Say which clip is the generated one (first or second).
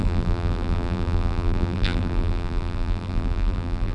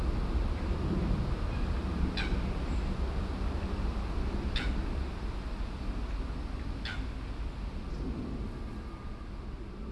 first